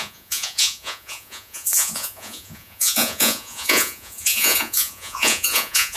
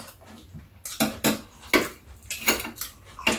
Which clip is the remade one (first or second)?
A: first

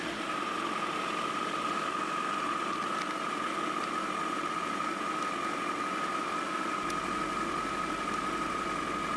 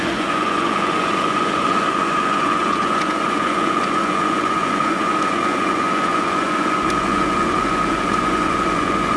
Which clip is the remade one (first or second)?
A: second